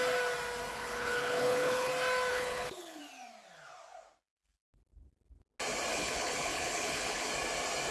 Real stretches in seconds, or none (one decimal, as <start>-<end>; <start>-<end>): 0.0-0.7; 1.9-2.3; 3.0-5.9; 7.3-7.9